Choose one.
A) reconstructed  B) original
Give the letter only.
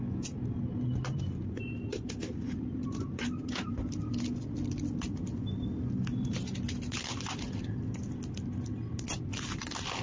B